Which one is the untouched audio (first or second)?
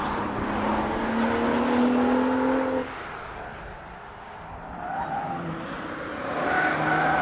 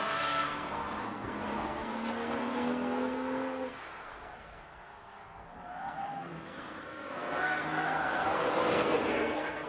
first